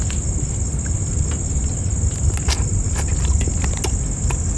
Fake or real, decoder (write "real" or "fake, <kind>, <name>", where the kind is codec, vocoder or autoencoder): real